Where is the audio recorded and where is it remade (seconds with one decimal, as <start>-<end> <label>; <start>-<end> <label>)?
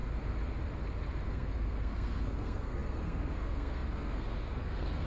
0.0-1.3 recorded; 1.3-5.1 remade